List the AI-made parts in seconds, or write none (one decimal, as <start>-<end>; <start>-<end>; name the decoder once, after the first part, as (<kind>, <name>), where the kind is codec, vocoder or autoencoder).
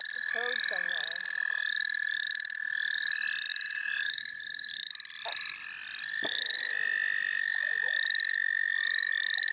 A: 3.5-4.2 (vocoder, Vocos)